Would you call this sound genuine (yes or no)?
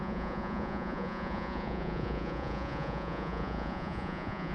no